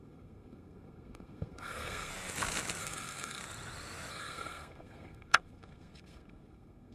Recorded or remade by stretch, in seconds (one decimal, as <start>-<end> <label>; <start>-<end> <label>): 0.0-2.1 remade; 2.1-2.8 recorded; 2.8-3.4 remade; 3.4-4.1 recorded; 4.1-6.9 remade